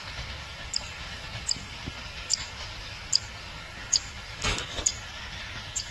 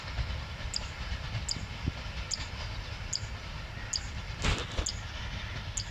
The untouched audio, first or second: second